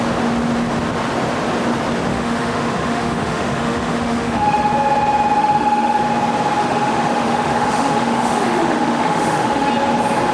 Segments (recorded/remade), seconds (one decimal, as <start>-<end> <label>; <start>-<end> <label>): 0.0-2.1 recorded; 2.1-4.7 remade; 4.7-5.4 recorded; 5.4-6.0 remade; 6.0-6.6 recorded; 6.6-9.7 remade; 9.7-10.3 recorded